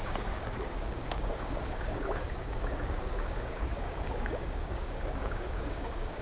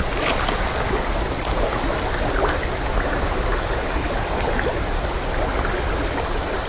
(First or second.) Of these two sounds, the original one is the second